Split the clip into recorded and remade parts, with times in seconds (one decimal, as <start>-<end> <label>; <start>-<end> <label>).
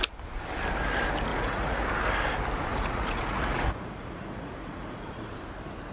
0.0-1.3 recorded; 1.3-1.8 remade; 1.8-2.7 recorded; 2.7-5.4 remade; 5.4-5.9 recorded